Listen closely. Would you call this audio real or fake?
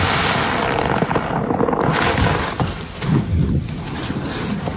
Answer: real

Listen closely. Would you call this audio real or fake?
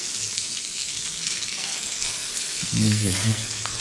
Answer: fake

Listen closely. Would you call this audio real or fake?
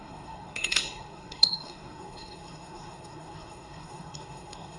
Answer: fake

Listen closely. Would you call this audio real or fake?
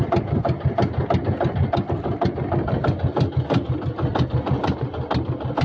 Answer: real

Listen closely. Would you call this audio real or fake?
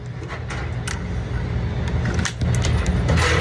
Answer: real